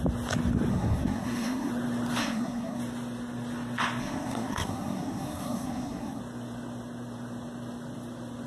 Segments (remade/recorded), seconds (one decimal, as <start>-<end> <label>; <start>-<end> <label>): 0.0-0.7 recorded; 0.7-1.7 remade; 1.7-2.2 recorded; 2.2-2.8 remade; 2.8-4.0 recorded; 4.0-6.2 remade; 6.2-8.5 recorded